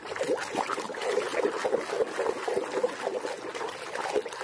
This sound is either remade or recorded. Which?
recorded